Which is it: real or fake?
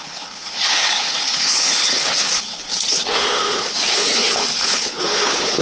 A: fake